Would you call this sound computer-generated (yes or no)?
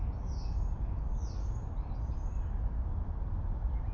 no